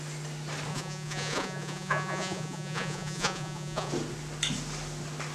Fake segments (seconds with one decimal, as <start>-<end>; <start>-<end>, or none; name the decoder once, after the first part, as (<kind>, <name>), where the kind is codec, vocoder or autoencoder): 0.7-3.9 (vocoder, Vocos)